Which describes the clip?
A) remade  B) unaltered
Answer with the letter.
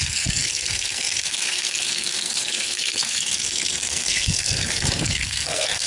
A